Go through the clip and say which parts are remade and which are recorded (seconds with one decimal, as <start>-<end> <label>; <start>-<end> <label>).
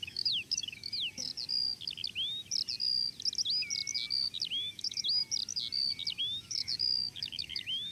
0.0-1.3 remade; 1.3-4.5 recorded; 4.5-5.2 remade; 5.2-6.2 recorded; 6.2-7.9 remade